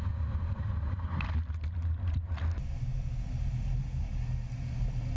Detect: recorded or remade recorded